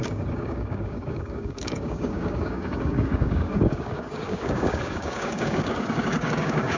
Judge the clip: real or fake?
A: fake